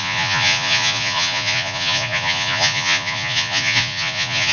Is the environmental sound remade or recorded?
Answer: remade